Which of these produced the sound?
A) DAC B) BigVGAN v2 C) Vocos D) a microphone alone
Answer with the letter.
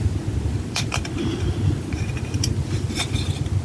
D